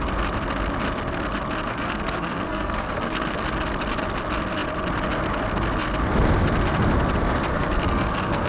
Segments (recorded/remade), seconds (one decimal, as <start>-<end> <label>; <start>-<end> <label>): 0.0-1.7 recorded; 1.7-3.4 remade; 3.4-7.5 recorded; 7.5-8.5 remade

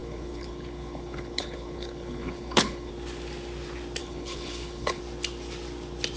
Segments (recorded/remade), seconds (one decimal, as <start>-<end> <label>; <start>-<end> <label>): 0.0-2.9 remade; 2.9-4.0 recorded; 4.0-5.0 remade; 5.0-6.2 recorded